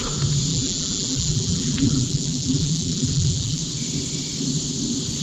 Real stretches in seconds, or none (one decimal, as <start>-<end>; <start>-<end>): 0.0-0.5; 3.6-5.2